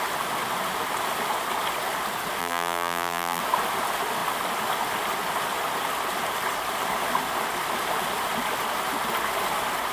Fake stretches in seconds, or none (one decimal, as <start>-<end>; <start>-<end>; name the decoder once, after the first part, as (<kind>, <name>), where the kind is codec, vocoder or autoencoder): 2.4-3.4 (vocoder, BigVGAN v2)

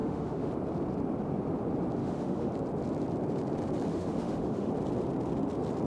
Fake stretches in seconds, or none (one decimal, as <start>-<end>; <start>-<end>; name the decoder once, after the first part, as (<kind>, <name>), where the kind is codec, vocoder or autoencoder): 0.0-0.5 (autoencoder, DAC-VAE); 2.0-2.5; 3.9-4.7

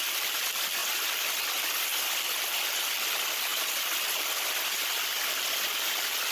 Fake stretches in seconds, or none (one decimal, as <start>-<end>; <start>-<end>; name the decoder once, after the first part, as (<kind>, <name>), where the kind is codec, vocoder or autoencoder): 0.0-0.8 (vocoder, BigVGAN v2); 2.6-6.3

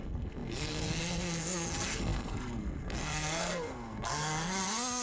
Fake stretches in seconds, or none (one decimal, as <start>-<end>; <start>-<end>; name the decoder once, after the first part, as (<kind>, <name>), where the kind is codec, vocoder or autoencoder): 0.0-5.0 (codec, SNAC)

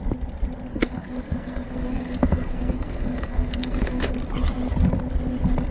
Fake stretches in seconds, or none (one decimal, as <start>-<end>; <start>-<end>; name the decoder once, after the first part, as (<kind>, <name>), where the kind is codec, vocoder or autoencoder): 0.7-4.1 (codec, SNAC)

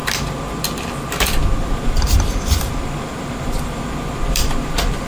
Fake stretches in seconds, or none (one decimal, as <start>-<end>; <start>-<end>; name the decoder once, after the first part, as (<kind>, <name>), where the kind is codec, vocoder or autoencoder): 1.6-5.1 (vocoder, BigVGAN v2)